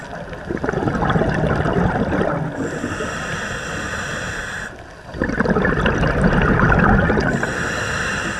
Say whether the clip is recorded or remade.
recorded